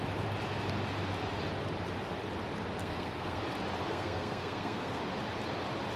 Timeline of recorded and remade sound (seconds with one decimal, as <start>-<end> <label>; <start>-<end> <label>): 0.0-2.8 recorded; 2.8-3.4 remade; 3.4-3.9 recorded; 3.9-5.0 remade; 5.0-6.0 recorded